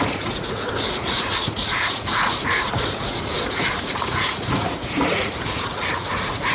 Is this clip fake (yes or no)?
yes